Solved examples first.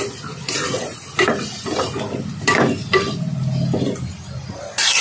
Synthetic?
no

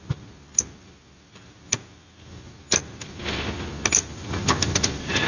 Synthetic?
no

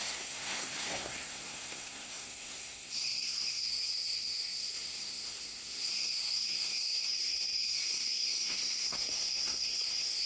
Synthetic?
yes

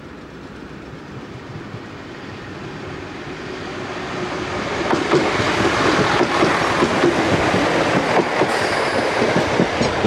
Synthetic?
no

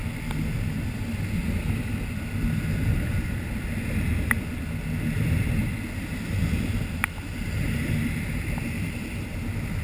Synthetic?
no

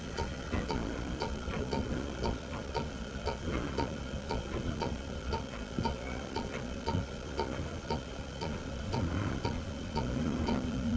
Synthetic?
yes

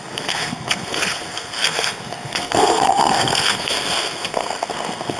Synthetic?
yes